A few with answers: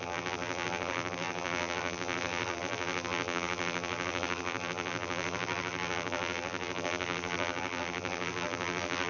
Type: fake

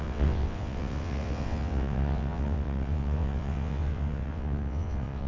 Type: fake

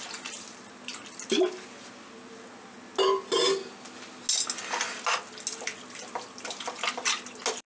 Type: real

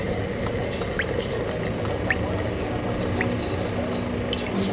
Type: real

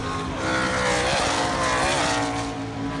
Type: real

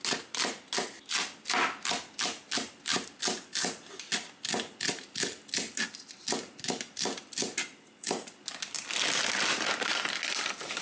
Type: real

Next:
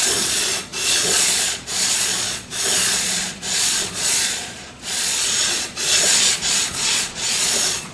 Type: fake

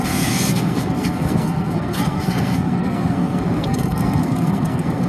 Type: fake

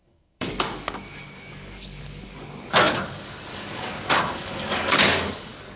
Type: fake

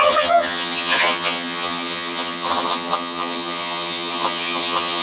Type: fake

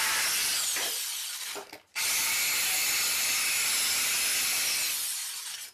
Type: real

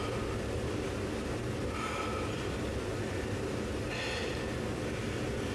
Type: real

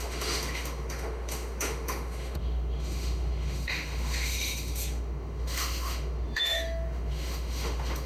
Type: fake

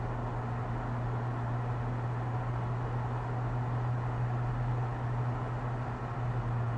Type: real